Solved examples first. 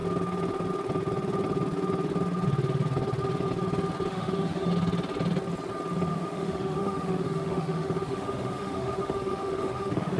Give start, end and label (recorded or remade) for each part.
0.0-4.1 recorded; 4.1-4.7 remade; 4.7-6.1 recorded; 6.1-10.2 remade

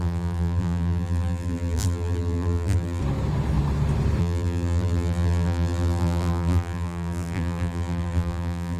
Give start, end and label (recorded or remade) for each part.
0.0-3.0 remade; 3.0-4.2 recorded; 4.2-8.8 remade

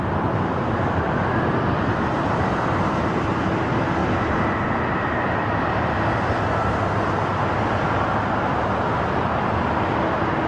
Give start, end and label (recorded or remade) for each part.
0.0-10.5 recorded

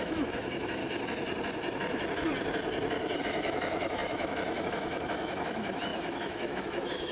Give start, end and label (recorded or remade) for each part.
0.0-0.8 remade; 0.8-3.2 recorded; 3.2-7.1 remade

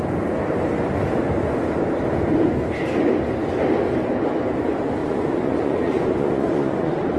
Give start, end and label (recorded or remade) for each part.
0.0-5.0 recorded; 5.0-7.2 remade